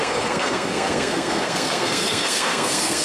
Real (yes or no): no